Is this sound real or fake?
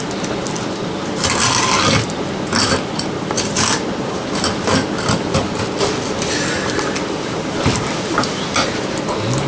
real